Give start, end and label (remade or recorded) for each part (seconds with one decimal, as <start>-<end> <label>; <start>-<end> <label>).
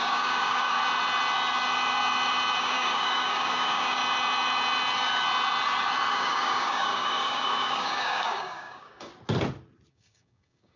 0.0-0.8 remade; 0.8-2.6 recorded; 2.6-4.0 remade; 4.0-6.1 recorded; 6.1-9.1 remade; 9.1-9.9 recorded; 9.9-10.8 remade